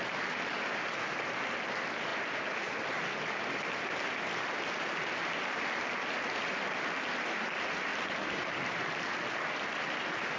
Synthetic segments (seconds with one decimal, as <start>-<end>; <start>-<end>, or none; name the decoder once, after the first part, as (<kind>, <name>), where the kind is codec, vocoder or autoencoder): none